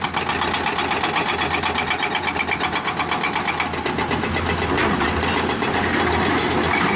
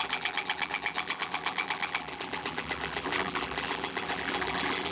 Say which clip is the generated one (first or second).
second